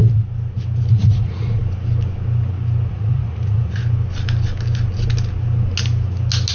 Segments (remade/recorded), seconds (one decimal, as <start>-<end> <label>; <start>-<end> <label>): 0.0-1.0 recorded; 1.0-1.6 remade; 1.6-2.9 recorded; 2.9-3.8 remade; 3.8-6.5 recorded

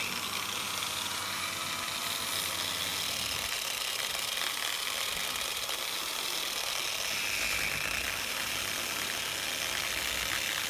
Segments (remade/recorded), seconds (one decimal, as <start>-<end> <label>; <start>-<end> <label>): 0.0-10.7 recorded

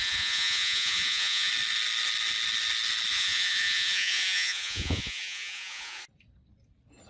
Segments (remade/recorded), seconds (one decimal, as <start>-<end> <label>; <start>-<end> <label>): 0.0-1.5 remade; 1.5-3.1 recorded; 3.1-6.0 remade; 6.0-7.1 recorded

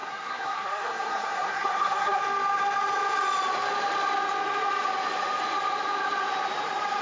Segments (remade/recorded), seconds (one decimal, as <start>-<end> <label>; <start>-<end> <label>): 0.0-2.2 remade; 2.2-7.0 recorded

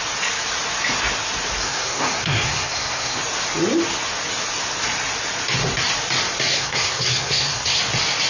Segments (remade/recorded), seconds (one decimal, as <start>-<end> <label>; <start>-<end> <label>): 0.0-1.6 recorded; 1.6-3.2 remade; 3.2-6.5 recorded; 6.5-7.8 remade; 7.8-8.3 recorded

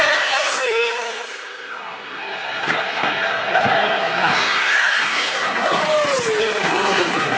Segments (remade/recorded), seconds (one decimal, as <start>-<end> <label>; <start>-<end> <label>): 0.0-5.8 remade; 5.8-6.4 recorded; 6.4-7.4 remade

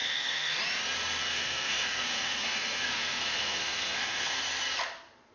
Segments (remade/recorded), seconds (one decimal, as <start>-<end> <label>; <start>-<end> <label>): 0.0-0.6 remade; 0.6-1.2 recorded; 1.2-4.4 remade; 4.4-5.3 recorded

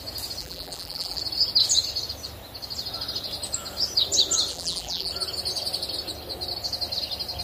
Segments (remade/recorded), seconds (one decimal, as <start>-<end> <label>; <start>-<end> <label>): 0.0-0.4 recorded; 0.4-1.2 remade; 1.2-4.5 recorded; 4.5-5.1 remade; 5.1-7.4 recorded